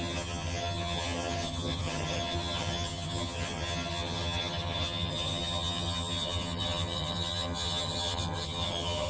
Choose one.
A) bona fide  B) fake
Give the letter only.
B